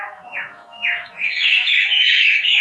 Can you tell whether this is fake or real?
fake